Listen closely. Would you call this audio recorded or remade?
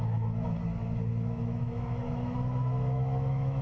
remade